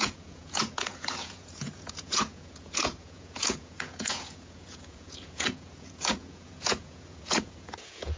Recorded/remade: remade